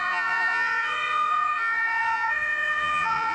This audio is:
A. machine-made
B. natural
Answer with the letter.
A